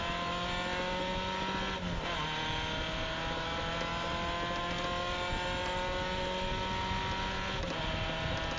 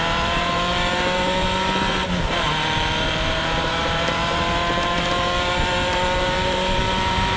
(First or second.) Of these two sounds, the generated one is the second